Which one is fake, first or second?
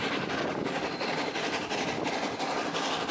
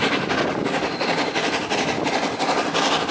first